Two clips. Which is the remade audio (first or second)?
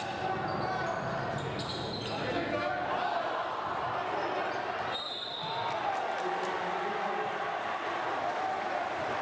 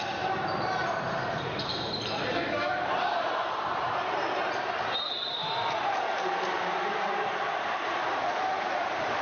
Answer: second